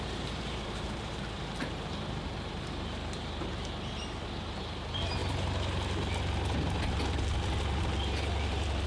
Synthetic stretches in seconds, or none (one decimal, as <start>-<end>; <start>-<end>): 0.0-5.2; 7.8-8.9